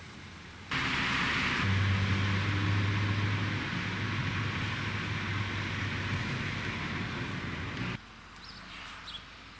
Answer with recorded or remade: recorded